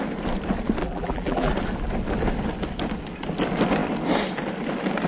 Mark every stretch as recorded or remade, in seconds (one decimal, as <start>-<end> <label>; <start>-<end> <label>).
0.0-0.8 recorded; 0.8-1.5 remade; 1.5-5.1 recorded